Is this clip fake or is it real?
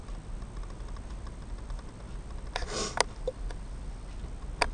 real